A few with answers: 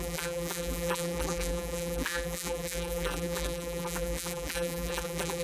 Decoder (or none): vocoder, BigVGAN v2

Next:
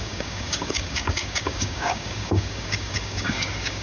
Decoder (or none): codec, DAC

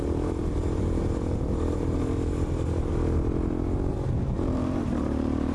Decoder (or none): vocoder, BigVGAN v2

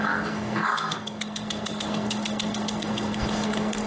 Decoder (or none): codec, SNAC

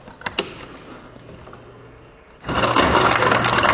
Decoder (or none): none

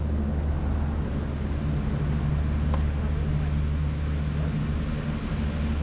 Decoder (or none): none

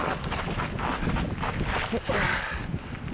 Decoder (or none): none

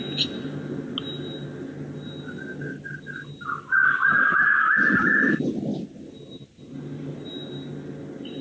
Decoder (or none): none